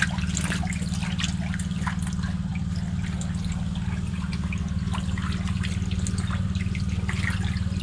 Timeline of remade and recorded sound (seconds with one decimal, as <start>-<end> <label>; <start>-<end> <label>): 0.0-7.8 recorded